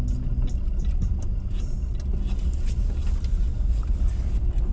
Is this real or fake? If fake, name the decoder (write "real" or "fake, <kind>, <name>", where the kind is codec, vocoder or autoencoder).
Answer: real